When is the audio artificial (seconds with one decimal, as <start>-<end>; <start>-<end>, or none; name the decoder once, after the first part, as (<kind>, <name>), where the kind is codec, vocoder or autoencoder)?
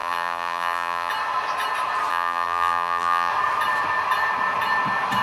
0.0-1.1 (vocoder, BigVGAN v2); 2.1-3.3